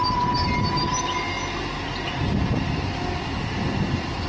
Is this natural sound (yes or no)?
yes